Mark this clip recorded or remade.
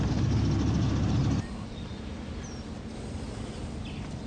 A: recorded